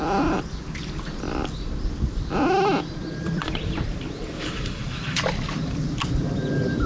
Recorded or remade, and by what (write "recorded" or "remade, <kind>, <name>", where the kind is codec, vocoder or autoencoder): remade, vocoder, BigVGAN v2